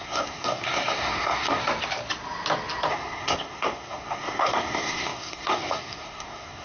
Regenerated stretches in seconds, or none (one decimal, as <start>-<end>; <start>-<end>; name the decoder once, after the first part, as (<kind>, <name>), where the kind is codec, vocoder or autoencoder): 0.0-1.6 (codec, SNAC); 2.9-6.6